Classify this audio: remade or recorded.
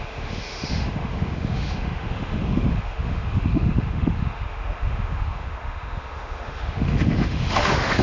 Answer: remade